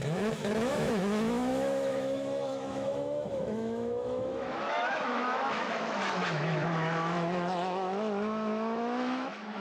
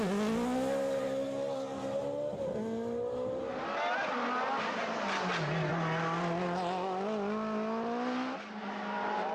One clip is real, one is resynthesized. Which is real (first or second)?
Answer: second